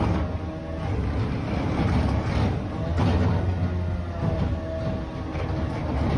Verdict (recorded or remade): recorded